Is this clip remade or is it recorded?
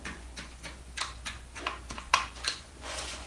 remade